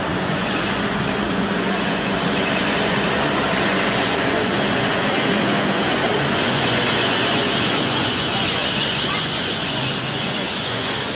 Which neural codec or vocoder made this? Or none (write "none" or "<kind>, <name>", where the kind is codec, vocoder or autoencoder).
vocoder, Vocos